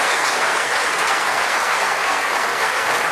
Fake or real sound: fake